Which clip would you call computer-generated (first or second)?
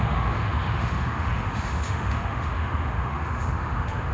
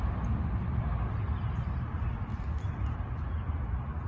first